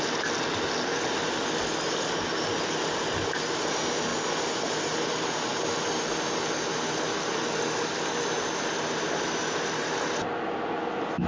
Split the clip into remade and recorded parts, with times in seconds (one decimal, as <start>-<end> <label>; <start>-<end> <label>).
0.0-11.3 recorded